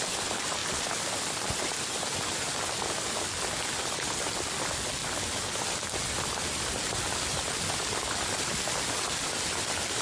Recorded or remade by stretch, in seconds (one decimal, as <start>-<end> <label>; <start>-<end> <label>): 0.0-10.0 recorded